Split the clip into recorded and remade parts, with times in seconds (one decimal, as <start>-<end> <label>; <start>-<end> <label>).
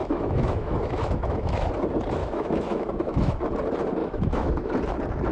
0.0-1.7 remade; 1.7-2.2 recorded; 2.2-3.3 remade; 3.3-4.0 recorded; 4.0-4.7 remade; 4.7-5.3 recorded